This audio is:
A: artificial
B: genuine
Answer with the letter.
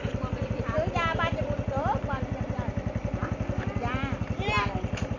B